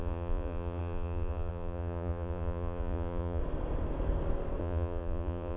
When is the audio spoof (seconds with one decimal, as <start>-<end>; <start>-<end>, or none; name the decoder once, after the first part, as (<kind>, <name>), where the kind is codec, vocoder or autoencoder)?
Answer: 0.0-3.4 (vocoder, Vocos); 4.6-5.6